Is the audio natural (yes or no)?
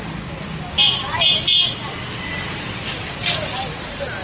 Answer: yes